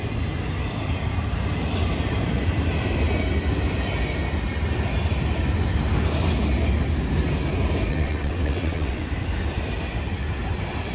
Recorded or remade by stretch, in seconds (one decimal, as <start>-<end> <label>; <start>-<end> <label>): 0.0-7.9 recorded; 7.9-9.1 remade; 9.1-10.9 recorded